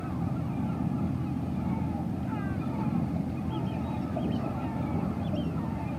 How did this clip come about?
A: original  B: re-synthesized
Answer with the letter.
A